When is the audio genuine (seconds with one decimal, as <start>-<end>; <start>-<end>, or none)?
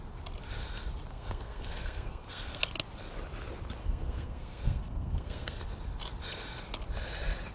0.0-1.1; 2.6-3.8; 5.6-7.5